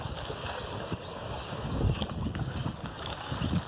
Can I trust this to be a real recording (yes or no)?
no